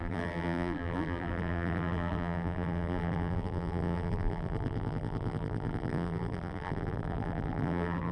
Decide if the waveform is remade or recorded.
remade